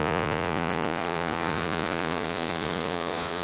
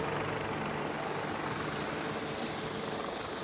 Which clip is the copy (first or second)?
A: first